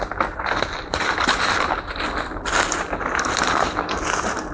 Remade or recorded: recorded